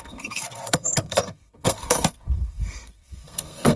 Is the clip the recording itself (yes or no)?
no